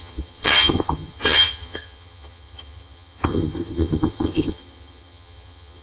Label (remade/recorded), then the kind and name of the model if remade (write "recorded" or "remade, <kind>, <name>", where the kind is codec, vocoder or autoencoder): remade, vocoder, HiFi-GAN